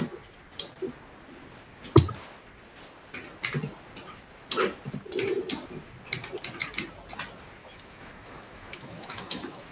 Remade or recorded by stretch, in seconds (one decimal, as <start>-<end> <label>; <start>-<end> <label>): 0.0-7.6 recorded; 7.6-9.7 remade

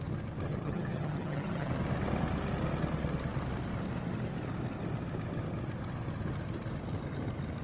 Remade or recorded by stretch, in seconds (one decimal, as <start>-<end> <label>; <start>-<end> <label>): 0.0-0.5 recorded; 0.5-1.7 remade; 1.7-7.6 recorded

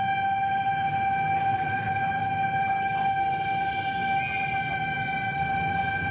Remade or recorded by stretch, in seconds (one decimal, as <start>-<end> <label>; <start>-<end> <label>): 0.0-1.5 recorded; 1.5-2.2 remade; 2.2-5.3 recorded; 5.3-6.1 remade

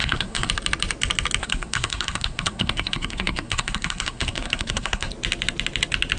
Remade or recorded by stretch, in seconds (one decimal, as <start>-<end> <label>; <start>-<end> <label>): 0.0-0.5 remade; 0.5-1.4 recorded; 1.4-5.1 remade; 5.1-6.2 recorded

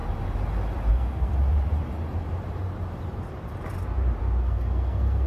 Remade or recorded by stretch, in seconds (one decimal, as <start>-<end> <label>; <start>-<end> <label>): 0.0-0.9 recorded; 0.9-1.3 remade; 1.3-4.2 recorded; 4.2-5.3 remade

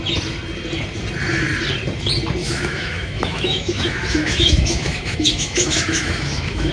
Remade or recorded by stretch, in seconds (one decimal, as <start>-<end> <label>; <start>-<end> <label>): 0.0-2.4 recorded; 2.4-6.7 remade

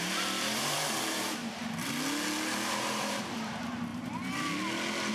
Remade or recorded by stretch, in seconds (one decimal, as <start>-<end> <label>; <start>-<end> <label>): 0.0-1.4 remade; 1.4-3.0 recorded; 3.0-3.9 remade; 3.9-5.1 recorded

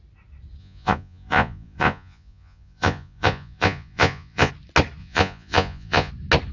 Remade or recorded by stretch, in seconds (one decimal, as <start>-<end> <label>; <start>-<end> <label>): 0.0-0.6 recorded; 0.6-4.5 remade; 4.5-5.0 recorded; 5.0-6.1 remade; 6.1-6.5 recorded